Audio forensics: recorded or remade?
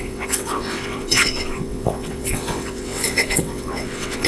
remade